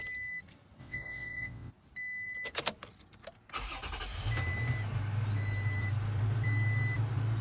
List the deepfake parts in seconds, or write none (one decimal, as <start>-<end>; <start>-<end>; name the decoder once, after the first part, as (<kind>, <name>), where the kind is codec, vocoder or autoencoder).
0.8-1.7 (vocoder, WaveNeXt)